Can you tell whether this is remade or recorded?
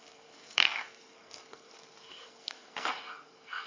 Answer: remade